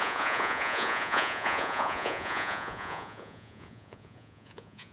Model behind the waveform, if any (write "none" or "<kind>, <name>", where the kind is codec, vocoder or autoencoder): vocoder, Vocos